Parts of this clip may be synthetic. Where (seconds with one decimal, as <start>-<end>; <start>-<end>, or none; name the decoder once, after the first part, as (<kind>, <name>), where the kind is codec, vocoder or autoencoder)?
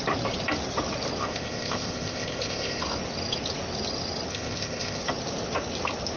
1.2-2.8 (codec, ZipCodec); 4.3-5.0